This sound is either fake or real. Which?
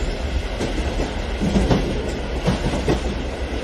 real